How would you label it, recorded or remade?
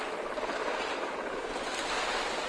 recorded